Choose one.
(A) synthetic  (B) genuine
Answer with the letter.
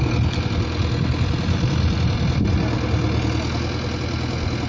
B